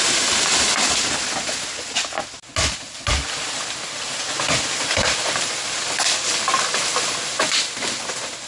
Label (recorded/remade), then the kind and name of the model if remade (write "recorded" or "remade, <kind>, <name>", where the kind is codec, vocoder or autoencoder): recorded